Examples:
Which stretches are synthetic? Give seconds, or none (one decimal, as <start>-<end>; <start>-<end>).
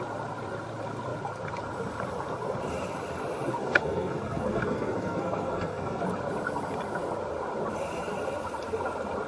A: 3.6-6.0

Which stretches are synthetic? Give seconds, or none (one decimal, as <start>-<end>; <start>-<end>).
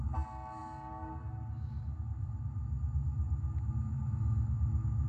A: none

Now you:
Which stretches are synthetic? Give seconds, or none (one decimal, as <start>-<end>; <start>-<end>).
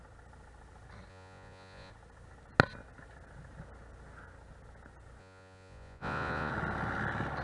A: 1.1-1.9; 5.2-6.5